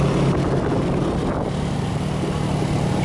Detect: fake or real real